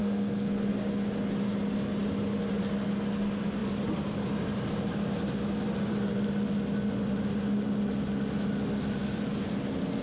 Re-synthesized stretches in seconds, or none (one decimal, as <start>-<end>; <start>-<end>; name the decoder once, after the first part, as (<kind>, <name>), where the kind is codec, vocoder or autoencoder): 0.0-0.7 (codec, SNAC)